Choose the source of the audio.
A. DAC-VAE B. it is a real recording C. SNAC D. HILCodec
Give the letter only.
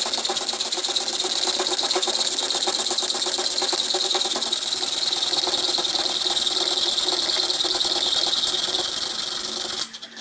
B